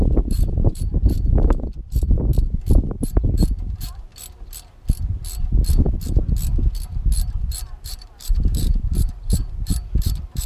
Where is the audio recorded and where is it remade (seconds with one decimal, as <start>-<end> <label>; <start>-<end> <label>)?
0.0-2.3 remade; 2.3-2.9 recorded; 2.9-4.1 remade; 4.1-7.8 recorded; 7.8-10.5 remade